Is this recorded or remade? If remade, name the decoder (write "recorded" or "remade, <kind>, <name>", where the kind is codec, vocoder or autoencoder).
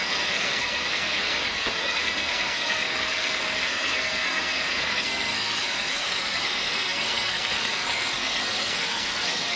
remade, codec, SNAC